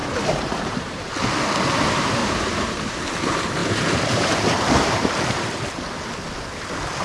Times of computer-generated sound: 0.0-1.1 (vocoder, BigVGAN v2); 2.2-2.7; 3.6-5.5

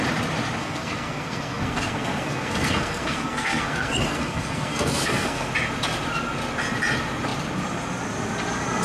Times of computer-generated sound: 0.6-5.5 (codec, SNAC)

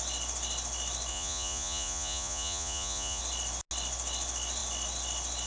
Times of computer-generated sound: 1.1-3.2 (vocoder, Vocos)

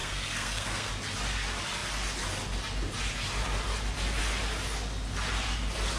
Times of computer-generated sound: 0.0-0.9 (codec, SNAC)

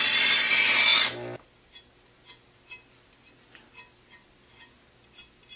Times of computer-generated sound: none